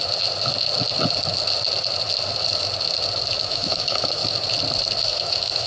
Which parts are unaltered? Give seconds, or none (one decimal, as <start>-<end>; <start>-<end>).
0.0-3.4; 4.2-5.0